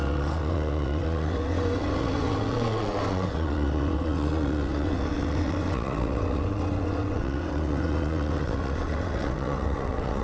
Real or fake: fake